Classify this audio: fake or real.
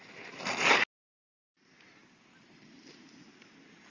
real